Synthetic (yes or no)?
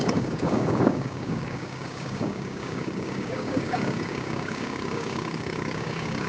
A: yes